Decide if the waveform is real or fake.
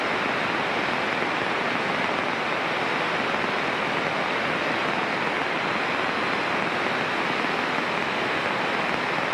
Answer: real